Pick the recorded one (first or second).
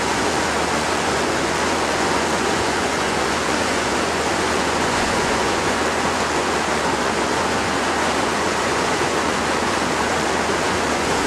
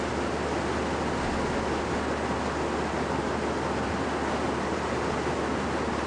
second